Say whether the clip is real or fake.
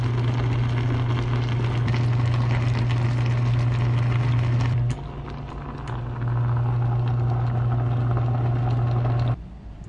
real